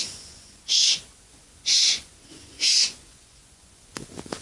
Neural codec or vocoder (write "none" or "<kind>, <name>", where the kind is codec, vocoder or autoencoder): vocoder, Vocos